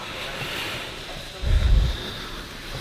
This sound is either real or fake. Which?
real